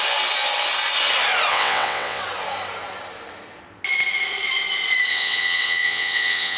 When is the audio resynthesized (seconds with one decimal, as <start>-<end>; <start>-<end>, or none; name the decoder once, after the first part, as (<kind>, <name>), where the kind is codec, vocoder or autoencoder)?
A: 1.5-2.2 (vocoder, WaveNeXt); 5.1-6.6